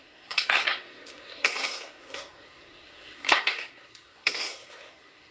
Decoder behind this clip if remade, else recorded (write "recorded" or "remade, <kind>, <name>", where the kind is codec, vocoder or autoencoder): remade, codec, SNAC